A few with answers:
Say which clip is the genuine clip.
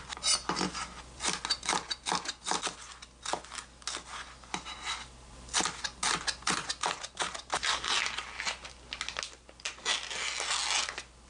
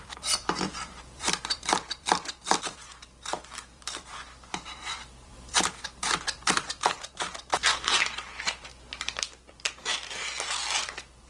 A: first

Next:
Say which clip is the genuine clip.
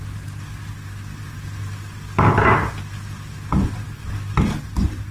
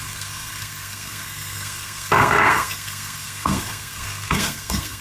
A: first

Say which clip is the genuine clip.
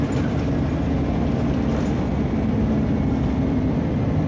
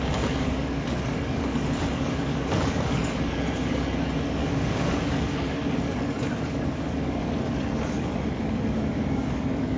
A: first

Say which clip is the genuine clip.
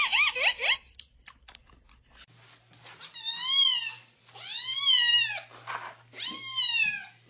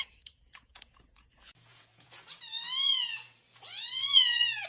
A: first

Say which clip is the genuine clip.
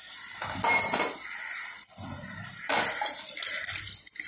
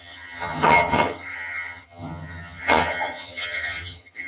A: first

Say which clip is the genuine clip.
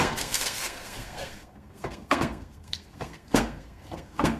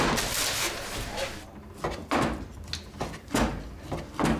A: second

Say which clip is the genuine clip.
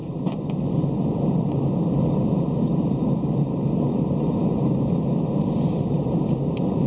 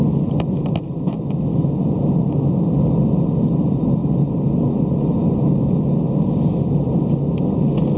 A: second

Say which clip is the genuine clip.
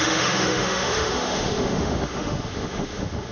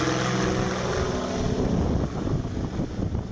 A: second